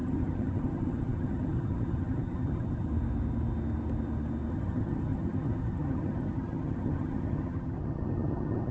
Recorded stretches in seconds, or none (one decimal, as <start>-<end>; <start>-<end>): 2.9-4.5